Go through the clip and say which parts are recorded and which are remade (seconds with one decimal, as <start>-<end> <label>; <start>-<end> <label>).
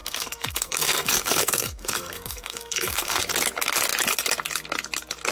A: 0.0-3.2 remade; 3.2-5.3 recorded